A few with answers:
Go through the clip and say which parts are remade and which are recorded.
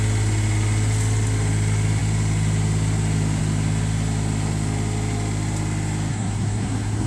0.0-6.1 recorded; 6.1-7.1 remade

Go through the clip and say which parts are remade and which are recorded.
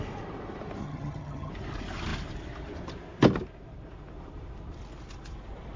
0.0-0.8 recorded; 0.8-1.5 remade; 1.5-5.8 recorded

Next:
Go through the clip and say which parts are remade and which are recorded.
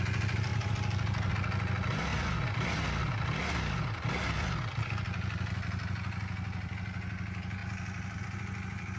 0.0-9.0 recorded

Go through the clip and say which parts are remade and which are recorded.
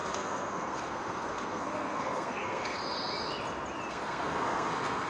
0.0-2.8 remade; 2.8-3.9 recorded; 3.9-5.1 remade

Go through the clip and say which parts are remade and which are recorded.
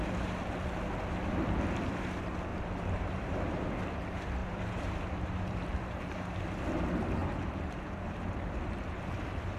0.0-2.5 recorded; 2.5-3.7 remade; 3.7-4.4 recorded; 4.4-6.3 remade; 6.3-7.2 recorded; 7.2-8.6 remade; 8.6-9.6 recorded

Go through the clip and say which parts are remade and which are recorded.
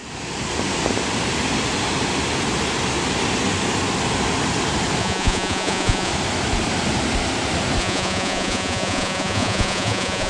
0.0-5.0 recorded; 5.0-6.1 remade; 6.1-7.8 recorded; 7.8-10.3 remade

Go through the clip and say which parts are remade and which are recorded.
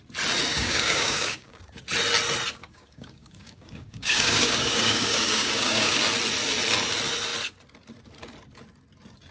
0.0-0.5 recorded; 0.5-1.8 remade; 1.8-2.6 recorded; 2.6-6.0 remade; 6.0-9.3 recorded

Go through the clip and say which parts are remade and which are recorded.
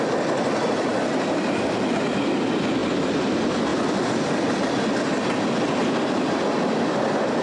0.0-7.4 recorded